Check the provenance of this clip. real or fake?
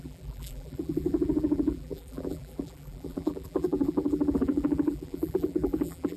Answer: fake